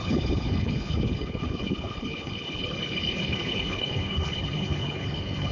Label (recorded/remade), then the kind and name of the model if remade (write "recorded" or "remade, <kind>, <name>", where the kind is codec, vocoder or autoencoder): remade, codec, HILCodec